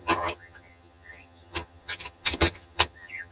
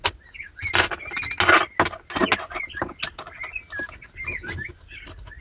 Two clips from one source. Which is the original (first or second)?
second